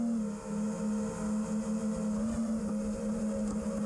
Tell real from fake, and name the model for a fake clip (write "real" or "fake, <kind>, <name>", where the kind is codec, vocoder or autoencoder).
real